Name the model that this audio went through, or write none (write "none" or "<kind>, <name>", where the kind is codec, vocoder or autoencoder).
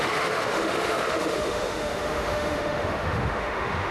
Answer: autoencoder, DAC-VAE